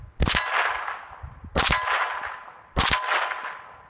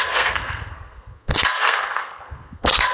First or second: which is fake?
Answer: second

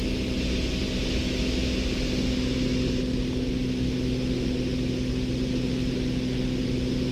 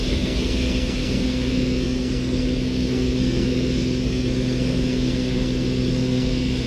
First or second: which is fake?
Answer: second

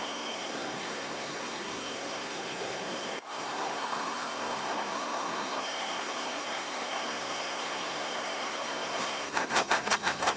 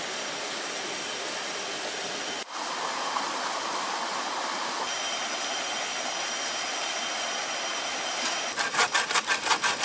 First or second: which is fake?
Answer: first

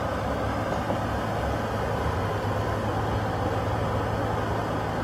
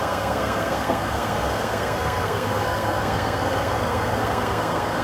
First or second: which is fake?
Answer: second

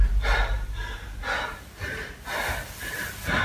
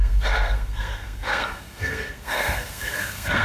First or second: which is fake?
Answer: second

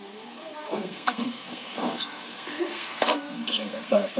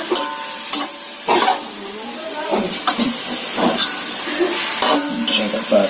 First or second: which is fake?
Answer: first